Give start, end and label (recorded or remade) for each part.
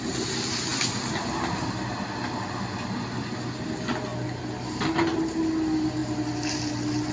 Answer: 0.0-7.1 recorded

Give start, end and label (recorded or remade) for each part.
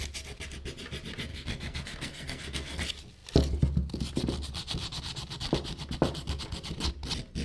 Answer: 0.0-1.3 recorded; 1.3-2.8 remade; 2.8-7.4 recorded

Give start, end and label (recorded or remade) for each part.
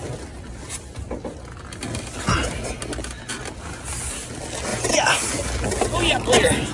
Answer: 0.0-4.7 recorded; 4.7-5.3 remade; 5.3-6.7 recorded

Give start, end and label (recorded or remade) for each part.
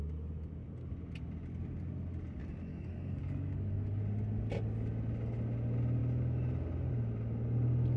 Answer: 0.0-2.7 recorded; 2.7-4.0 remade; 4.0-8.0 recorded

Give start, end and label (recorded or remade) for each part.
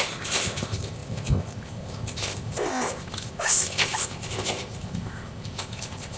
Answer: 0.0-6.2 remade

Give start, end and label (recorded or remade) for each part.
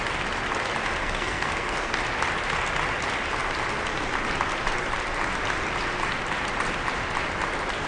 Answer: 0.0-1.0 recorded; 1.0-1.9 remade; 1.9-7.9 recorded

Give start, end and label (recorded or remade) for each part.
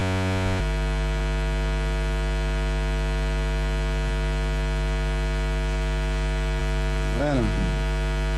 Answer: 0.0-0.6 remade; 0.6-8.4 recorded